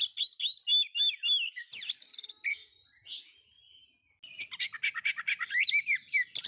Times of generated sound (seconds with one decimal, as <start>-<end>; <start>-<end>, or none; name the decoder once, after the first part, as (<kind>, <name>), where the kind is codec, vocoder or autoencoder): none